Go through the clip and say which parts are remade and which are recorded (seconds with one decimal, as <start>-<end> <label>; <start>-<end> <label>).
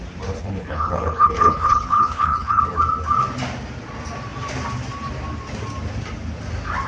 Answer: 0.0-0.4 recorded; 0.4-2.6 remade; 2.6-6.9 recorded